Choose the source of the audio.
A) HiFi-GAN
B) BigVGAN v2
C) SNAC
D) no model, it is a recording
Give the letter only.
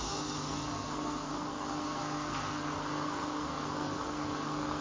C